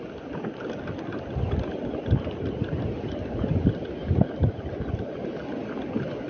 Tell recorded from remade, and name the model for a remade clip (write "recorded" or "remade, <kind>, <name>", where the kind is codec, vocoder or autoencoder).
recorded